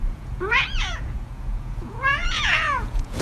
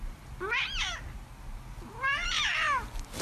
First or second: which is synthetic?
first